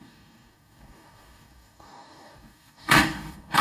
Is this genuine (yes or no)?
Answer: no